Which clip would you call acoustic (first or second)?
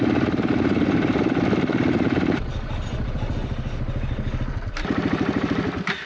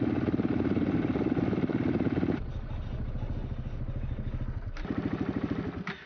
second